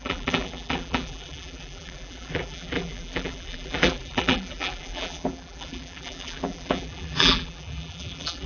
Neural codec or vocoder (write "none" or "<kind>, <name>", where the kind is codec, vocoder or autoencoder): vocoder, BigVGAN v2